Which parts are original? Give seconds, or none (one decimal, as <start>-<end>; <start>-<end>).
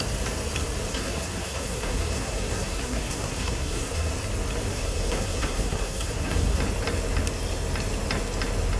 0.0-0.9; 4.1-4.7; 6.6-8.8